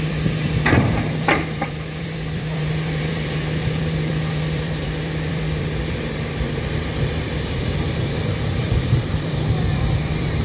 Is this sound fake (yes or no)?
yes